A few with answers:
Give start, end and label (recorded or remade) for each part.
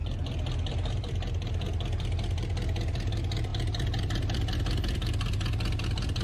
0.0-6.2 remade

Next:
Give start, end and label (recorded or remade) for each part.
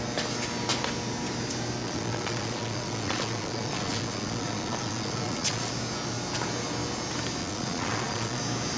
0.0-1.8 recorded; 1.8-5.7 remade; 5.7-7.4 recorded; 7.4-8.4 remade; 8.4-8.8 recorded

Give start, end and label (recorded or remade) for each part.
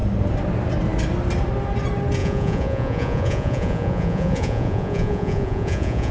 0.0-2.2 recorded; 2.2-6.1 remade